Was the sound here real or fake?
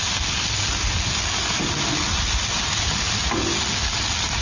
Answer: real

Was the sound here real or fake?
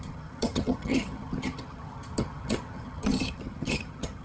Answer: fake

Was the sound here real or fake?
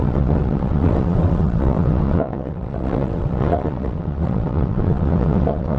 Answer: fake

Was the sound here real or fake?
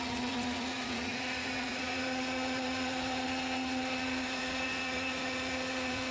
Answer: fake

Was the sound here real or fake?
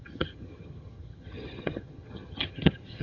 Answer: fake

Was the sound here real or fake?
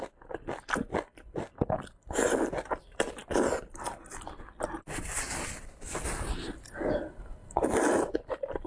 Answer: real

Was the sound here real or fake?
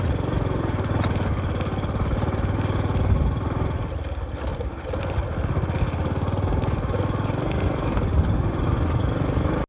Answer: real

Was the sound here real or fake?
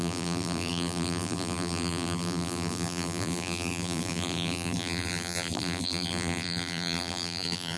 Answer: fake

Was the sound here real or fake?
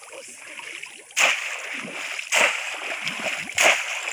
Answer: real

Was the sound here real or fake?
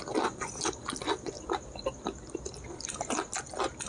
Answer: real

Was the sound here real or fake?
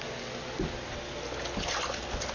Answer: real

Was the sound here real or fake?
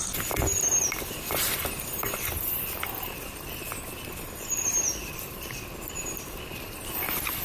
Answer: real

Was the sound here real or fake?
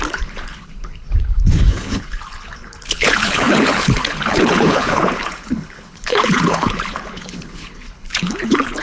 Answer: fake